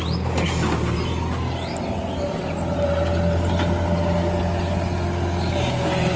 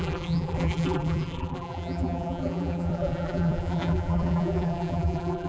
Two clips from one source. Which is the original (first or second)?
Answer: first